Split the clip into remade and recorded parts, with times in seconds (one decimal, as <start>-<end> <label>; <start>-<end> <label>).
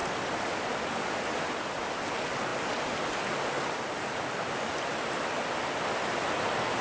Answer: 0.0-6.8 recorded